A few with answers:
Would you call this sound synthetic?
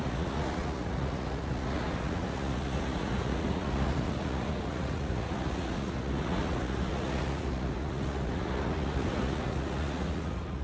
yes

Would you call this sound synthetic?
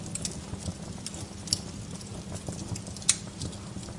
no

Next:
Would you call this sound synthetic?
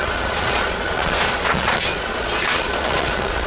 yes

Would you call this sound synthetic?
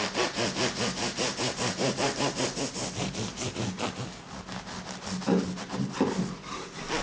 no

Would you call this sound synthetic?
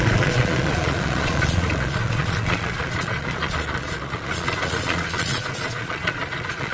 yes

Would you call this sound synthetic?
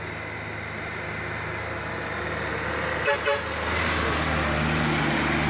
no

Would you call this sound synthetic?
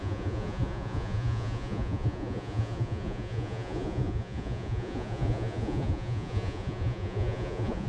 yes